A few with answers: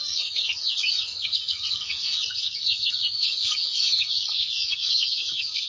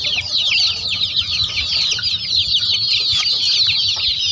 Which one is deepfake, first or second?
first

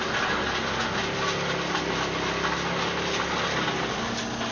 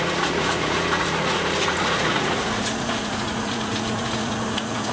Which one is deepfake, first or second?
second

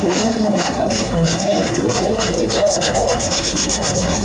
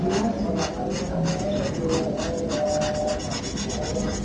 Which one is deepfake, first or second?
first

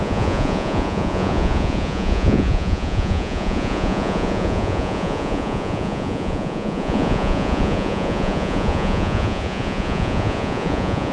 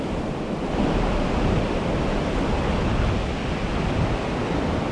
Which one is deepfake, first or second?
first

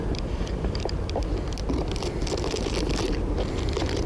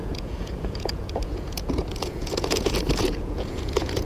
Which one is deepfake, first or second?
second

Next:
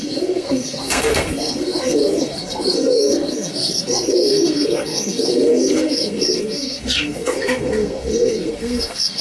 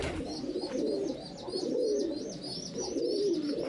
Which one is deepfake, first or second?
first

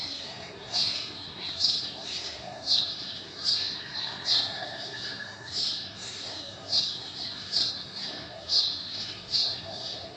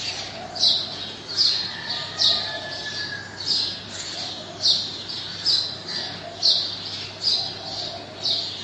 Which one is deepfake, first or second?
first